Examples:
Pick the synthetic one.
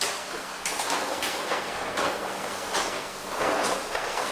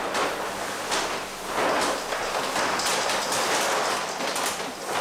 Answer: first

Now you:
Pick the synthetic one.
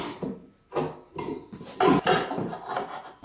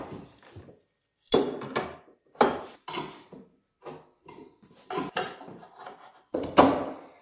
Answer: second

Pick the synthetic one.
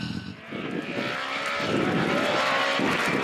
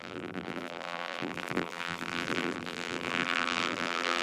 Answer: second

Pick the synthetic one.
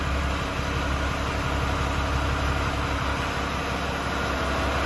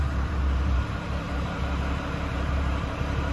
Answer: second